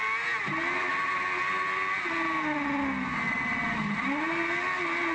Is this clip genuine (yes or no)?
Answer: yes